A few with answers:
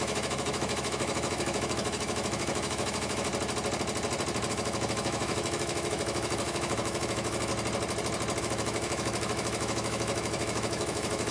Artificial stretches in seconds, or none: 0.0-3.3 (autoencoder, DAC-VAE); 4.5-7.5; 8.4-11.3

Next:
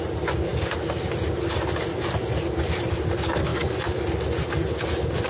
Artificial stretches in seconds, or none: none

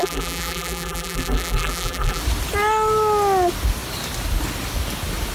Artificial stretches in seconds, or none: 0.0-2.2 (vocoder, BigVGAN v2)

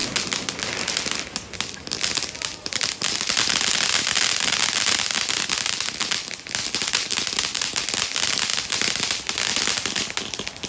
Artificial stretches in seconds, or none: none

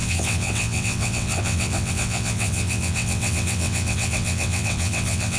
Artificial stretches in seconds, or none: 0.0-5.4 (vocoder, WaveNeXt)

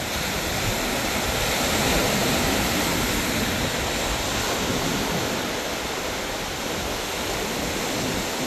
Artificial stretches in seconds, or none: none